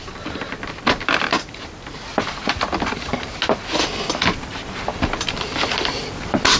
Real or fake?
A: real